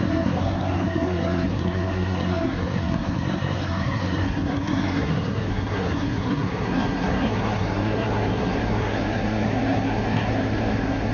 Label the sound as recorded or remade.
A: remade